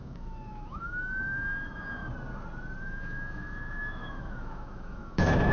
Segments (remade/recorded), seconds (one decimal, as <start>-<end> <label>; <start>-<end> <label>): 0.0-2.0 remade; 2.0-2.8 recorded; 2.8-5.5 remade